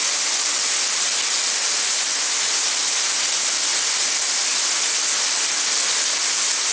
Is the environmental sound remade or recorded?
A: recorded